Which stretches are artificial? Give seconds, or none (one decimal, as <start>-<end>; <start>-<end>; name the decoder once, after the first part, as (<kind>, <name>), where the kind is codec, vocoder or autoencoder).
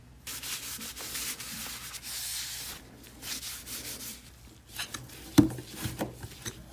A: none